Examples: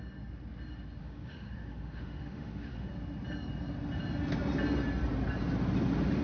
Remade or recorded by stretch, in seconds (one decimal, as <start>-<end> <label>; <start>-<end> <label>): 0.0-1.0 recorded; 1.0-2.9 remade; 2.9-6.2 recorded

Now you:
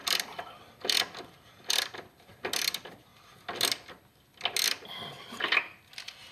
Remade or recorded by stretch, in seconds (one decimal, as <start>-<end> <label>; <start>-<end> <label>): 0.0-6.3 recorded

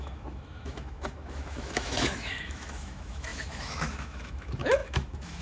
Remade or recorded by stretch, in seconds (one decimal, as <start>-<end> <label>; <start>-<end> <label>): 0.0-5.4 remade

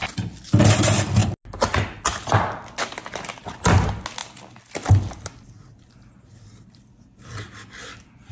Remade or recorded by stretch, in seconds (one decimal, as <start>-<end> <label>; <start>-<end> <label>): 0.0-8.3 recorded